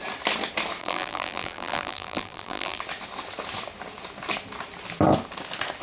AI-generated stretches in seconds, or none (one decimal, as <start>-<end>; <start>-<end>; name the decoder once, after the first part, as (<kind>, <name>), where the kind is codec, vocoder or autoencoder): 0.8-2.8 (vocoder, BigVGAN v2)